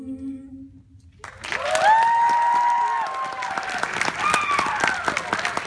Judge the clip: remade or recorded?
recorded